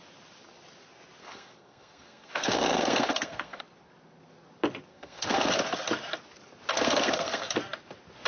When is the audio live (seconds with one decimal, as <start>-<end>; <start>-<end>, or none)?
0.0-1.2; 3.6-4.9; 5.5-6.7; 7.5-8.3